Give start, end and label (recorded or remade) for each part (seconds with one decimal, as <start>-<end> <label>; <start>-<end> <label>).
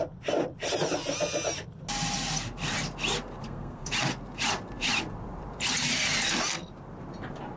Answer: 0.0-3.4 recorded; 3.4-3.9 remade; 3.9-7.6 recorded